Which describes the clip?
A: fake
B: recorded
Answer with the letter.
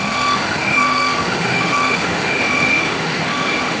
A